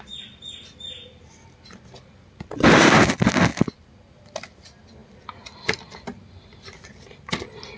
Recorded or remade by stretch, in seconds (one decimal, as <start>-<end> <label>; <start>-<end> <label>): 0.0-7.8 recorded